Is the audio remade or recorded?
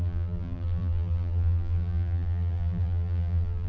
remade